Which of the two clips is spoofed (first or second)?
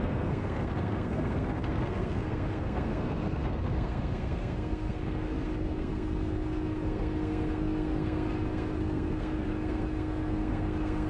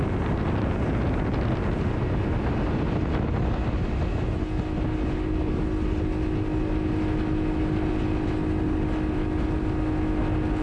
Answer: first